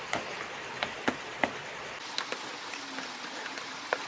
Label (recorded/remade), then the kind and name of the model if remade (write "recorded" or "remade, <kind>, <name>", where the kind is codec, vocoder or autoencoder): recorded